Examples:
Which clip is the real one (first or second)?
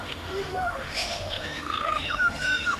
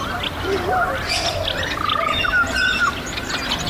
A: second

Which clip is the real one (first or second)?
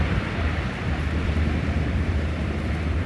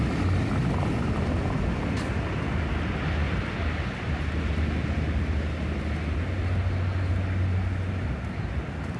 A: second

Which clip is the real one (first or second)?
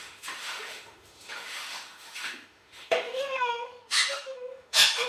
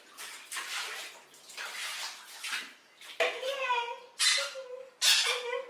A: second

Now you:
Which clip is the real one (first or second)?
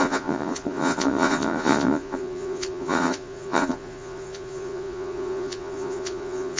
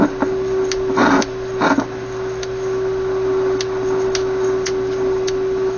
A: second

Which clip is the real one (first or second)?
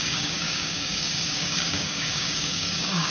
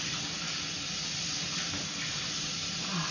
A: second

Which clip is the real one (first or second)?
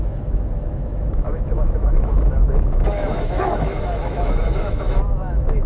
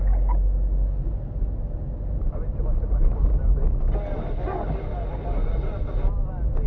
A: second